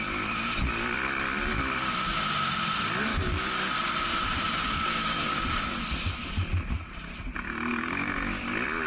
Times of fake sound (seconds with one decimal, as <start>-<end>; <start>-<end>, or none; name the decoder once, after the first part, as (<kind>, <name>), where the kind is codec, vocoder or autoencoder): 3.1-3.7 (codec, DAC); 4.6-5.2; 7.7-8.5